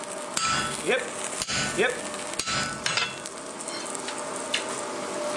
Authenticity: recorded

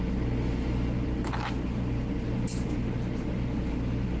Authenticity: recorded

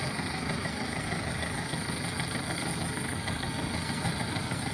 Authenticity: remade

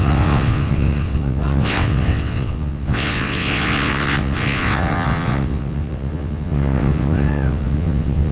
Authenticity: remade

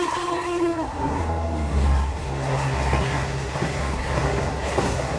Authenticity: remade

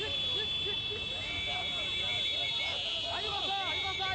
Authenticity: recorded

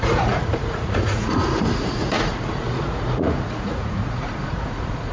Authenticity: remade